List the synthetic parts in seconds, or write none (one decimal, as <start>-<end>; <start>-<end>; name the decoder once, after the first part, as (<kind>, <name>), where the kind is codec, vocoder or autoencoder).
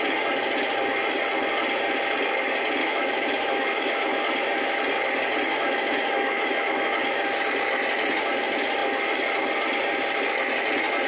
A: 2.8-4.2 (autoencoder, DAC-VAE); 5.5-7.3